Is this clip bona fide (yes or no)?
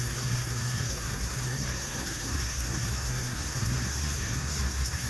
no